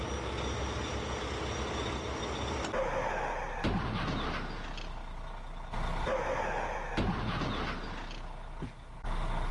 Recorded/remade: recorded